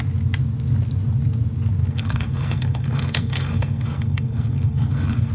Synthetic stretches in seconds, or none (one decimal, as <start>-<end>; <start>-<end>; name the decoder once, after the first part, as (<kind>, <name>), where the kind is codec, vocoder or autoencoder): 1.8-5.3 (codec, SNAC)